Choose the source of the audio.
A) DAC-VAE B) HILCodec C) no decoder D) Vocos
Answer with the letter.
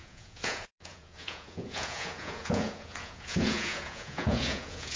D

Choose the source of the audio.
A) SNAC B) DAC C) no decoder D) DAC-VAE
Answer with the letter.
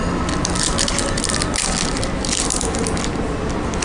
C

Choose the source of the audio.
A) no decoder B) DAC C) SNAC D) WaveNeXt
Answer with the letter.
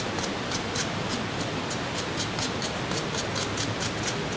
A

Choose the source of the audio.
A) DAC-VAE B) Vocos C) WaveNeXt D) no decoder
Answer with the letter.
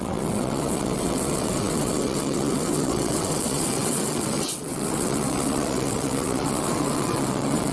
C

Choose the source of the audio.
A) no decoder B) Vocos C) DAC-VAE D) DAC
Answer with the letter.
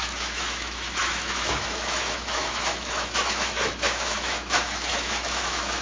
C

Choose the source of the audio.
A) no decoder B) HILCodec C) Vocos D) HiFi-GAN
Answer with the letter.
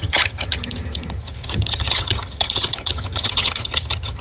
D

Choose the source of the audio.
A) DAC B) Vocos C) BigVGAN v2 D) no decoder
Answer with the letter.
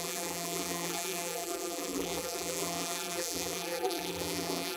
C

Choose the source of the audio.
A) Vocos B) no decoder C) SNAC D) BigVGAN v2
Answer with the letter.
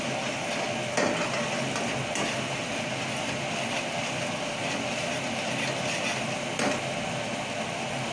B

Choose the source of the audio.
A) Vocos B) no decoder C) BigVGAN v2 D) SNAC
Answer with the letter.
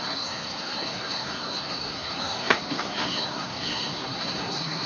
D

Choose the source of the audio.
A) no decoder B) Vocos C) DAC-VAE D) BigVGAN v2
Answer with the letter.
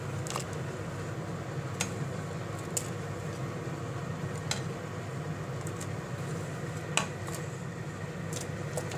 A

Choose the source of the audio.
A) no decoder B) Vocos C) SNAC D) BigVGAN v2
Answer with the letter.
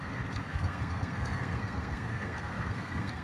C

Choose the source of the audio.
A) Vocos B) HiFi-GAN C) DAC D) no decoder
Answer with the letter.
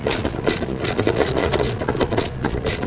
A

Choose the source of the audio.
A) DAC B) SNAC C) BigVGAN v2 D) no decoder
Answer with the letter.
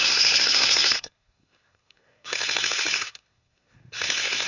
B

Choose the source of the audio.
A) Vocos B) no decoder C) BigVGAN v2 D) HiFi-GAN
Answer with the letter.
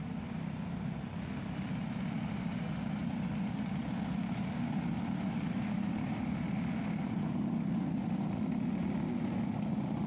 B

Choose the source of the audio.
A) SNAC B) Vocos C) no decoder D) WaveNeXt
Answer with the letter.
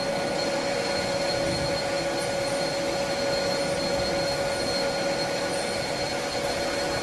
C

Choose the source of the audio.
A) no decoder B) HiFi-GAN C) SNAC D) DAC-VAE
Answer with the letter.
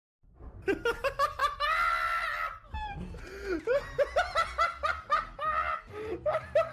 A